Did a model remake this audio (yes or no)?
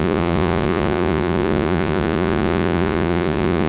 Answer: yes